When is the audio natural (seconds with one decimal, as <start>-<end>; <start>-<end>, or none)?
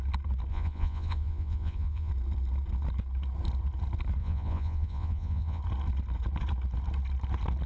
0.0-0.5; 2.1-4.2; 5.6-7.7